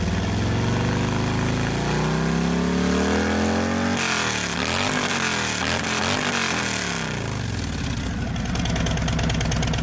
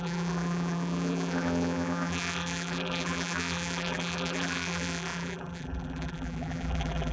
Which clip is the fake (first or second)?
second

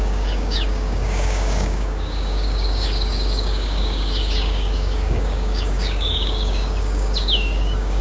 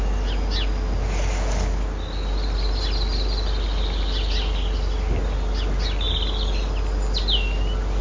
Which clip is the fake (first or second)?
first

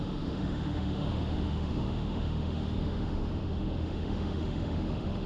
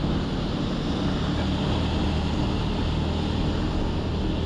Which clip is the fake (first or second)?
first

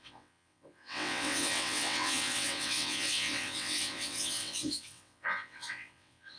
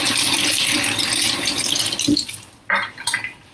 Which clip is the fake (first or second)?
first